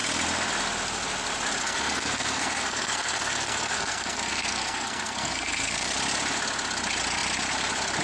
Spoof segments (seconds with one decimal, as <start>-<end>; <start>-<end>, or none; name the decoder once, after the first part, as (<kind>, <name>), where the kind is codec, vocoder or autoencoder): 1.6-5.9 (codec, SNAC)